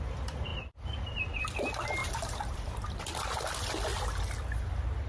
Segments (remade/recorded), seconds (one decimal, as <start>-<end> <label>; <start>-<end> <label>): 0.0-2.0 recorded; 2.0-3.0 remade; 3.0-5.1 recorded